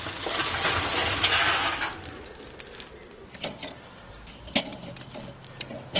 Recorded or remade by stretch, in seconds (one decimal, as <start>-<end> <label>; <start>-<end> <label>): 0.0-6.0 recorded